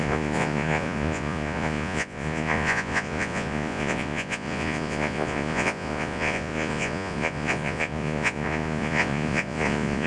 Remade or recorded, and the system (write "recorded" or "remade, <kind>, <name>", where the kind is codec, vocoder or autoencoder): remade, vocoder, Vocos